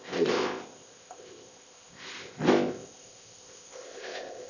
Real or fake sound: fake